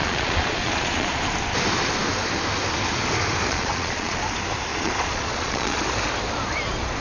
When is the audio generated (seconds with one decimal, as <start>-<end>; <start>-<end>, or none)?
0.0-1.2; 3.5-4.2; 4.7-5.8